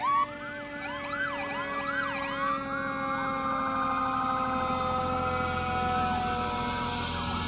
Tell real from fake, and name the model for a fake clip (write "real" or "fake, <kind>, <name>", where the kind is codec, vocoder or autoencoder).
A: real